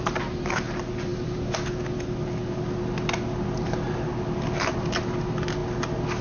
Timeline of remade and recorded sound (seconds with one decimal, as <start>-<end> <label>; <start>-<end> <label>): 0.0-6.2 recorded